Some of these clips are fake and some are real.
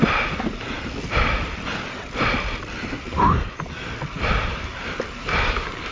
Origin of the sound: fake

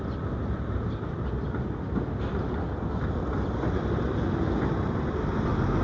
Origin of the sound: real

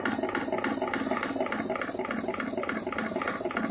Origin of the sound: real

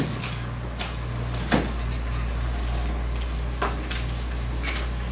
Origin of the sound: real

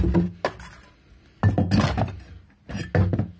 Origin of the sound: real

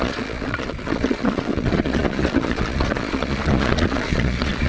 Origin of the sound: fake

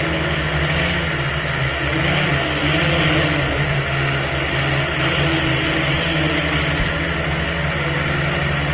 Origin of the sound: real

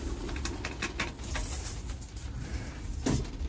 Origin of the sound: real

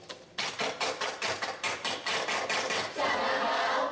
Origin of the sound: real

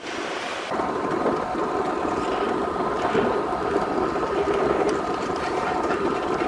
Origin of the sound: real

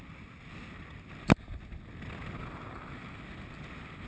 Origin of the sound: real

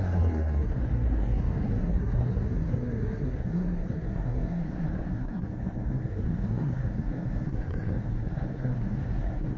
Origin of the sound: fake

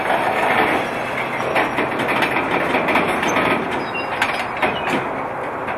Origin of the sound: fake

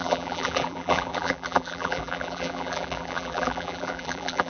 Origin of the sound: fake